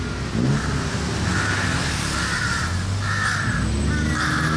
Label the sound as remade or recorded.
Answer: recorded